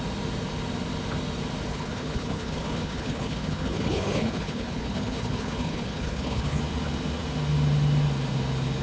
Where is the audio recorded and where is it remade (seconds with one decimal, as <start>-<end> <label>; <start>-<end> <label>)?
0.0-1.7 recorded; 1.7-6.6 remade; 6.6-8.8 recorded